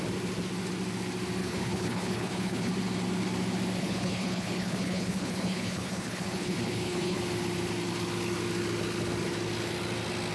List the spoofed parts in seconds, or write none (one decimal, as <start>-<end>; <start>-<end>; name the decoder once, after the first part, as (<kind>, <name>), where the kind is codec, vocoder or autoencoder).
1.4-2.7 (codec, HILCodec); 3.8-7.2